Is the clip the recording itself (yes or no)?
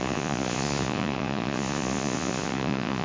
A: no